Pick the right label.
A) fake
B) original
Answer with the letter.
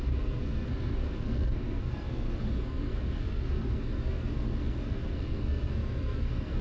A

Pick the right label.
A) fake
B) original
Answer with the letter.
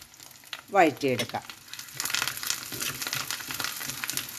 B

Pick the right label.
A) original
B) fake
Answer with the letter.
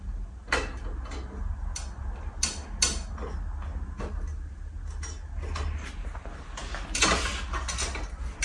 A